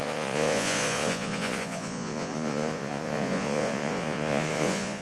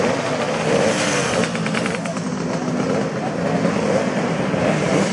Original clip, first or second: second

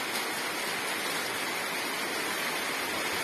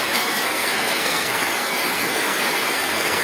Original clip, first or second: first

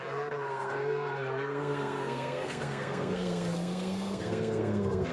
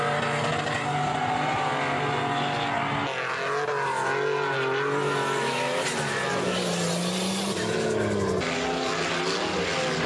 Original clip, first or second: second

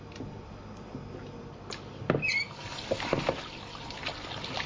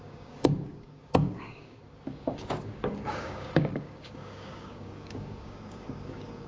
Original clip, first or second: first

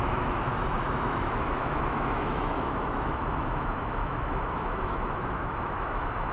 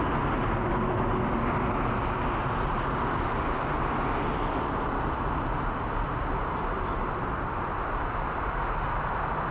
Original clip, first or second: second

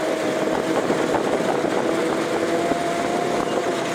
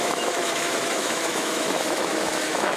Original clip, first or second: first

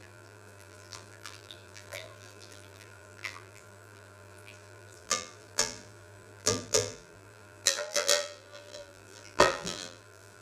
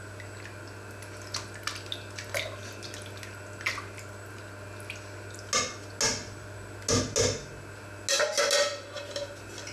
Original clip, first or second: second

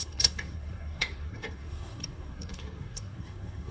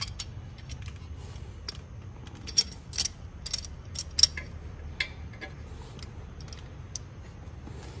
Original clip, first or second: second